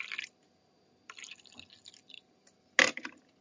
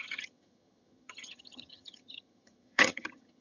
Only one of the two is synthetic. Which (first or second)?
second